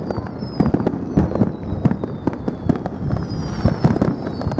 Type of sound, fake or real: real